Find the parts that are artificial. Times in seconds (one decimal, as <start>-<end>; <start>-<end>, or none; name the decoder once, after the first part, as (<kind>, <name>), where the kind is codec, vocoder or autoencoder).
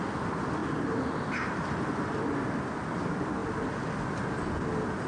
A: none